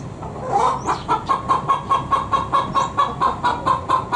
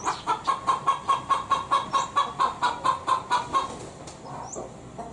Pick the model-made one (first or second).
second